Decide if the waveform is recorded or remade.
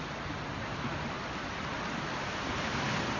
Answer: recorded